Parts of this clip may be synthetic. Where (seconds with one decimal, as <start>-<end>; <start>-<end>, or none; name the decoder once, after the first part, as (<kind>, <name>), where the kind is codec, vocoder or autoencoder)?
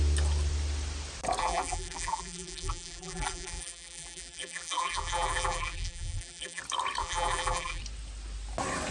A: 1.4-6.6 (vocoder, BigVGAN v2); 7.0-7.8